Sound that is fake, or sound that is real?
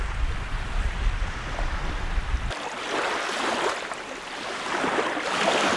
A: fake